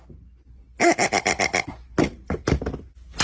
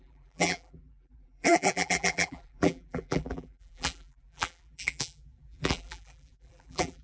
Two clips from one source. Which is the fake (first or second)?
second